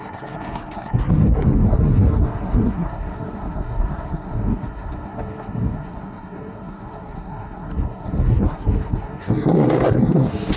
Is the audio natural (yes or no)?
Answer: no